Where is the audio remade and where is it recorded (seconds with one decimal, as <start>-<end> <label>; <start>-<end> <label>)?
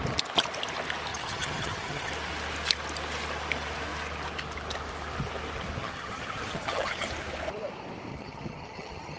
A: 0.0-1.1 recorded; 1.1-2.1 remade; 2.1-5.8 recorded; 5.8-7.1 remade; 7.1-8.1 recorded; 8.1-9.2 remade